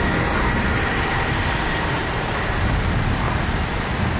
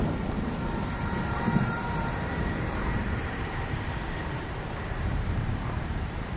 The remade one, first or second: second